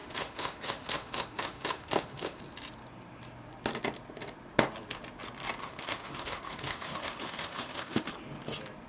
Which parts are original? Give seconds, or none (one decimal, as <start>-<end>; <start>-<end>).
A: 2.4-5.6; 8.1-8.9